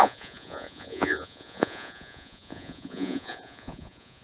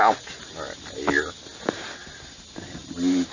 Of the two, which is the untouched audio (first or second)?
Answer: second